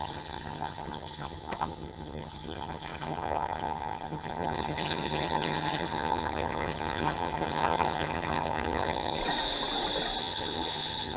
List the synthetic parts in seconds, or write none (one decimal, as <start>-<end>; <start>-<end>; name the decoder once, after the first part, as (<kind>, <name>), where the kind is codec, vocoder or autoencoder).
0.0-9.2 (vocoder, HiFi-GAN); 10.2-11.2